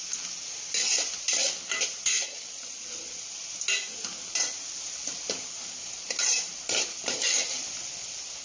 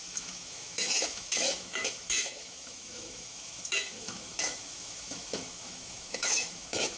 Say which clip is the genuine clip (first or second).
first